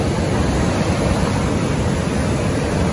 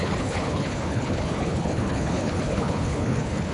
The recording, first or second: first